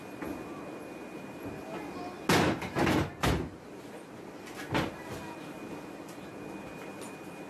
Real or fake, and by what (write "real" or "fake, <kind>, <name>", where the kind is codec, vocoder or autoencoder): real